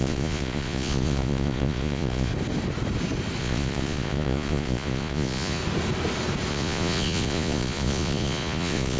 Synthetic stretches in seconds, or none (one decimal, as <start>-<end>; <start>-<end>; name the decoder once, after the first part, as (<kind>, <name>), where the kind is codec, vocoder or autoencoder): 0.0-2.3 (vocoder, Vocos); 3.4-5.6; 6.5-9.0